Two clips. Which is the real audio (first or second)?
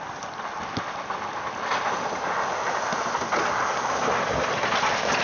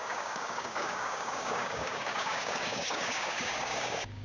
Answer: first